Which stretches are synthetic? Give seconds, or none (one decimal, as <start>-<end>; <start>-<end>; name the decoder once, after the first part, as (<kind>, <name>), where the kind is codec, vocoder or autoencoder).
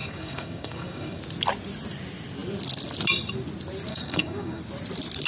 0.0-1.2 (codec, DAC); 3.9-4.6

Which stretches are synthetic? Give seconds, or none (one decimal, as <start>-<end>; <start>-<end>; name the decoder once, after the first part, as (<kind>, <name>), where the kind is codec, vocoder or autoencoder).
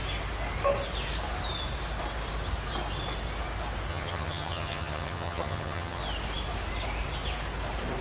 3.9-6.0 (vocoder, HiFi-GAN)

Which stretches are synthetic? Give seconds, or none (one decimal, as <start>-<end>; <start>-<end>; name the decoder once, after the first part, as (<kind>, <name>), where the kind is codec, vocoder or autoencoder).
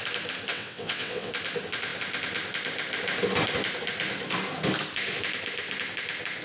0.5-1.3 (vocoder, WaveNeXt)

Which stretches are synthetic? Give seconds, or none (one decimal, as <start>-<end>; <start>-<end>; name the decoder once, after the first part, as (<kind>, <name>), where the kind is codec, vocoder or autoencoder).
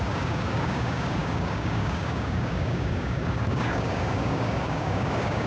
0.0-5.5 (codec, DAC)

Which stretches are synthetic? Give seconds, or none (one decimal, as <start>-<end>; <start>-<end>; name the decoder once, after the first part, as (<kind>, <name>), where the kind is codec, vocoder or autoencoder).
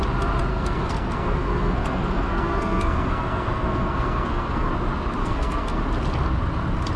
0.5-4.7 (codec, SNAC); 5.2-5.8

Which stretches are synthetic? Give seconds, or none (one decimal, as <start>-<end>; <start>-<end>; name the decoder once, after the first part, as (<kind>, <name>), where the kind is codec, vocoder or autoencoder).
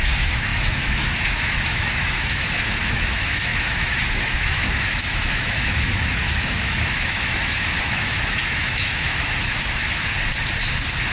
0.0-10.1 (autoencoder, DAC-VAE)